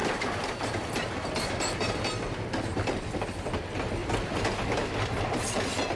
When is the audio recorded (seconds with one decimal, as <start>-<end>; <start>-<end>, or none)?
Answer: 1.1-2.7; 3.5-4.0; 5.2-6.0